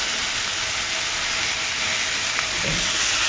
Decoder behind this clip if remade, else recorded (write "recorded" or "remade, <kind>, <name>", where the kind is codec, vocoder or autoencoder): recorded